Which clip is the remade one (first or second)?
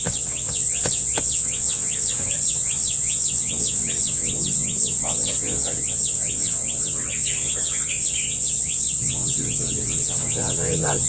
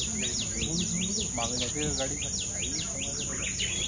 first